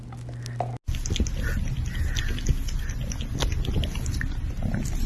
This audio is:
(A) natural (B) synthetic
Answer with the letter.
A